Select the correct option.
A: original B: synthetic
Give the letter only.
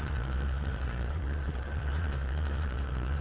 B